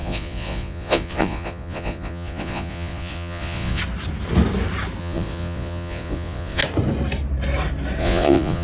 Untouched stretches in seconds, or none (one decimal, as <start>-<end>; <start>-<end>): 3.8-5.0; 6.6-8.0